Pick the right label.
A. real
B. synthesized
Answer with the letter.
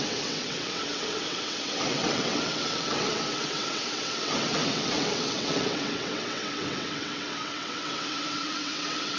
B